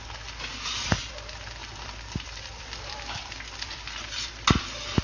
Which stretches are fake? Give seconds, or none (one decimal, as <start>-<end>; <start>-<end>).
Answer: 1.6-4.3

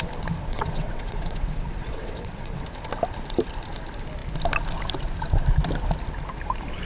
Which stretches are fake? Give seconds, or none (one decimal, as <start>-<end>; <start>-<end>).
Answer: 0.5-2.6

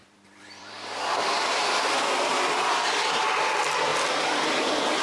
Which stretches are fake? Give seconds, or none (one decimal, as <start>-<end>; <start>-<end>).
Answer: 0.0-2.3; 3.4-3.9; 4.5-5.0

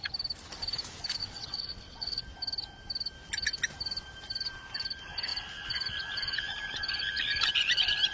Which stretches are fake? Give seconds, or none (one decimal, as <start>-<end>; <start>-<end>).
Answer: 1.2-2.2

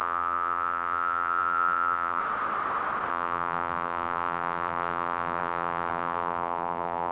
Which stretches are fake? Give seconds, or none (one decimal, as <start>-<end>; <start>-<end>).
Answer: 0.0-2.2; 3.1-7.1

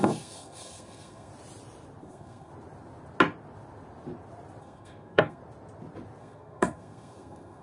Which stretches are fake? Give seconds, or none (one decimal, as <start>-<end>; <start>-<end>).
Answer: 0.0-1.3; 2.0-2.5; 4.6-5.4; 6.2-7.6

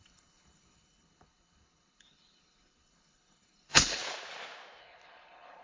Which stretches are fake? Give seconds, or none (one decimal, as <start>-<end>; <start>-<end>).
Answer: 0.0-4.0; 4.8-5.6